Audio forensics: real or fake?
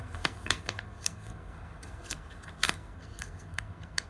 fake